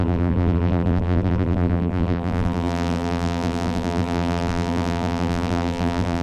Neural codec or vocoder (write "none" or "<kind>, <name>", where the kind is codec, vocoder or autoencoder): vocoder, BigVGAN v2